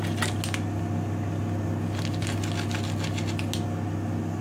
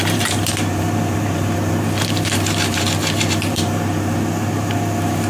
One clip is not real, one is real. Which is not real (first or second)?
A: second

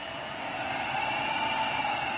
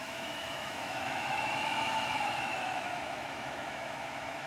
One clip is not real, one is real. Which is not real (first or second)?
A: second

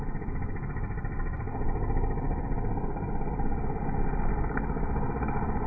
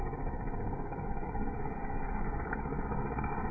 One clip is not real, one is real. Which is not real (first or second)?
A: second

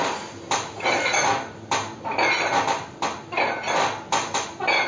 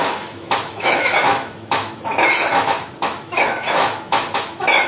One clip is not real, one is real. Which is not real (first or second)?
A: second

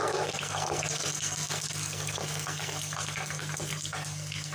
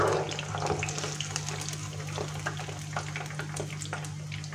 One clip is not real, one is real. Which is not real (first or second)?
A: first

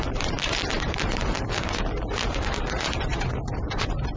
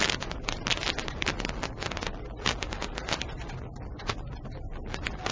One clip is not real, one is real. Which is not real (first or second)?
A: first